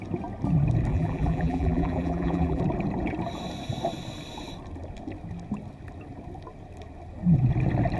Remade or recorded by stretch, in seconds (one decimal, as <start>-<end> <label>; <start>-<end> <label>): 0.0-0.9 recorded; 0.9-2.6 remade; 2.6-8.0 recorded